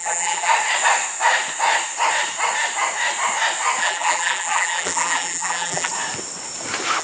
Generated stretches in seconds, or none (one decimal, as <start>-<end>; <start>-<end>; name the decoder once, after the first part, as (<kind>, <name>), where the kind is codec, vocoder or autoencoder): 0.0-0.5 (vocoder, BigVGAN v2); 3.8-5.9